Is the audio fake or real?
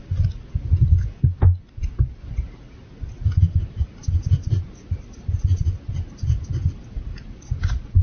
real